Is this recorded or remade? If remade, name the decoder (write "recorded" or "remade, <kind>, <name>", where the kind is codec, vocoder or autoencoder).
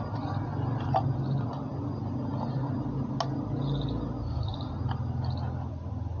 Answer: recorded